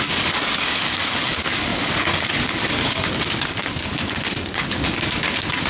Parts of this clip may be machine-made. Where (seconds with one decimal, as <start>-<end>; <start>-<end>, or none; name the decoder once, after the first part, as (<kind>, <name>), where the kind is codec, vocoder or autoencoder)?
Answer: 0.0-5.7 (codec, DAC)